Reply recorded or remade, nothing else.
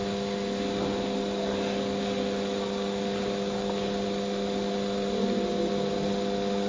recorded